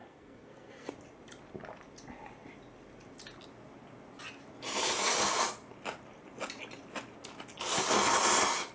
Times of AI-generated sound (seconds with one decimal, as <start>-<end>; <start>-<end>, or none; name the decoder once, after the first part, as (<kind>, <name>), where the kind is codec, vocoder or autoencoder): 0.0-0.9 (codec, SNAC)